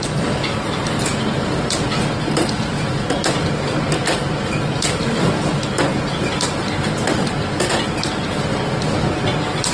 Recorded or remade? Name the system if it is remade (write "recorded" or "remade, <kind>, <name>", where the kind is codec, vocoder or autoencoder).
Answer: recorded